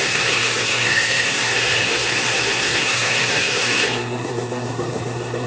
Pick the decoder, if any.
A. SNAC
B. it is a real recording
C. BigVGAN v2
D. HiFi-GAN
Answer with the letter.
A